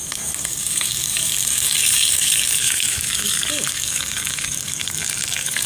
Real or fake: fake